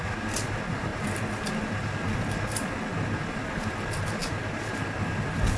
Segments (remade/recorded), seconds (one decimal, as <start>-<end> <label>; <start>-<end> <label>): 0.0-5.6 recorded